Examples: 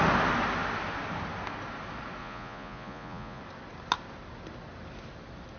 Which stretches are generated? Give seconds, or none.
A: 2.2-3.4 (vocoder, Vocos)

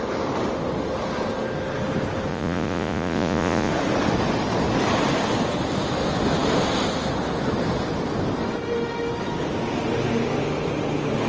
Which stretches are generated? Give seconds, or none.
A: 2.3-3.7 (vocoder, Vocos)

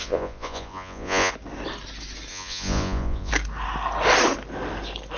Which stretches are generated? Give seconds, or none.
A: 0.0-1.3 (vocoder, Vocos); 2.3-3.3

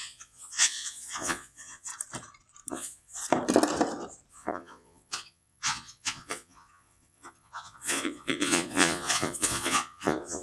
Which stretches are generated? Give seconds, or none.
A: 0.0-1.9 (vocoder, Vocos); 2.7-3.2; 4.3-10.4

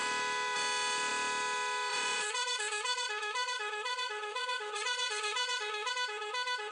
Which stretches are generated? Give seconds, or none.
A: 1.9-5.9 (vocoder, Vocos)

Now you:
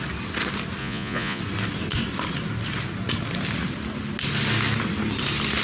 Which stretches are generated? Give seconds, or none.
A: 0.8-1.4 (vocoder, Vocos)

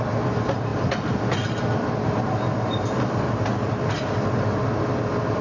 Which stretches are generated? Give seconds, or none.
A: none

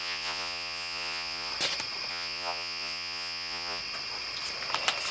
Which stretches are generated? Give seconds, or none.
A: 0.0-1.5 (vocoder, Vocos); 2.1-3.8